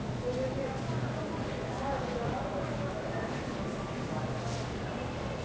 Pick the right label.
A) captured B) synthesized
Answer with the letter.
A